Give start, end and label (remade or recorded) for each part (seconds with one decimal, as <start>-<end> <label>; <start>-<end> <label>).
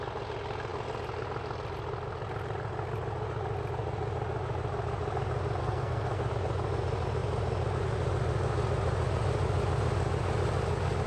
0.0-5.6 recorded; 5.6-6.3 remade; 6.3-11.1 recorded